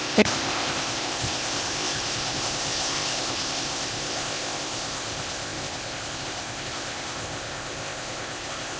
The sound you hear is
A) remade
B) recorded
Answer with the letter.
A